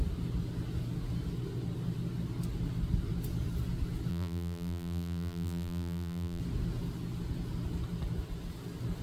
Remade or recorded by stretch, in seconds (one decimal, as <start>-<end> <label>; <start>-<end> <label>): 0.0-4.1 recorded; 4.1-6.4 remade; 6.4-9.0 recorded